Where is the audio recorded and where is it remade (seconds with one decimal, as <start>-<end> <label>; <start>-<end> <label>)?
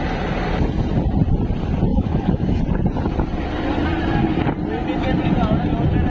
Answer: 0.0-1.9 recorded; 1.9-2.6 remade; 2.6-6.1 recorded